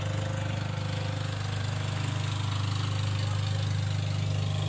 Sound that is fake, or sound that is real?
real